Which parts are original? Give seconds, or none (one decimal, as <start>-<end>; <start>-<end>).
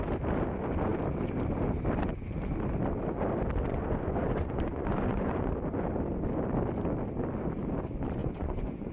0.0-3.7; 5.5-8.2